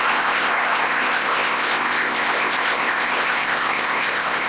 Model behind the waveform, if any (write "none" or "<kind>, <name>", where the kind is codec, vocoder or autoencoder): codec, ZipCodec